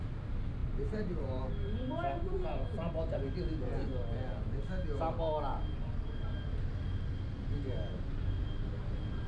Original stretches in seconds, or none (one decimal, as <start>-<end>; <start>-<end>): 0.0-0.6; 1.5-9.3

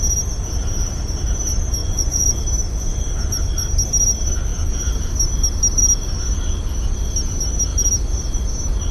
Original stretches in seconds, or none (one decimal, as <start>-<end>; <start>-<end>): 0.0-1.8; 2.4-8.9

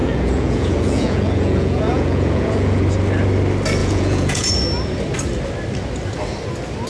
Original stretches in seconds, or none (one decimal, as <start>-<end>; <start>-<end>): 2.8-3.8; 4.5-6.9

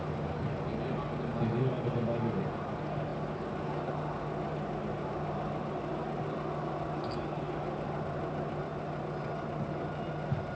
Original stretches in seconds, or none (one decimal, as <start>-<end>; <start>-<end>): 0.0-10.5

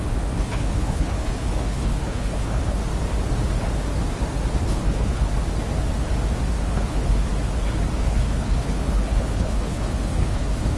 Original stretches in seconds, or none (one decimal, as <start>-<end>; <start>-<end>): 2.8-4.5; 5.3-6.5; 7.3-8.0

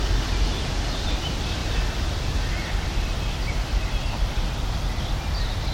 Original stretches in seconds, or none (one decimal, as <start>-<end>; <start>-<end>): 0.0-5.7

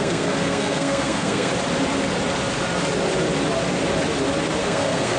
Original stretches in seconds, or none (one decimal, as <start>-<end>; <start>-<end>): 1.5-4.6